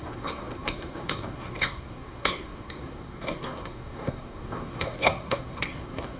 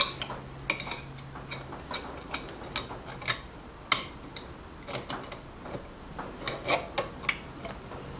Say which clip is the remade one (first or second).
first